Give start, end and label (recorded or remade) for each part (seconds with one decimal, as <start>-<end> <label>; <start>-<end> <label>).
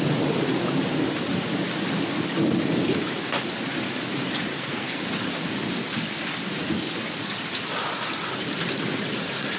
0.0-4.5 recorded; 4.5-5.0 remade; 5.0-9.6 recorded